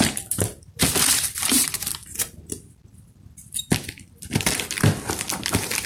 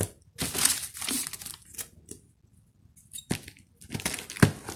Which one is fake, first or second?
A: first